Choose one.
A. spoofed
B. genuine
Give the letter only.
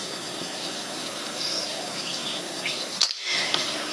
A